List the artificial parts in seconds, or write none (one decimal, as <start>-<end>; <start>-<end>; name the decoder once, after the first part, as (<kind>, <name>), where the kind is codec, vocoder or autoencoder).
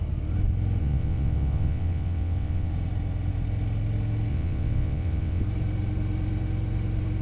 0.8-2.7 (vocoder, WaveNeXt); 4.3-5.4